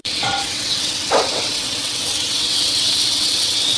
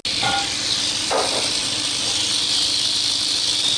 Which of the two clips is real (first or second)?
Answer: second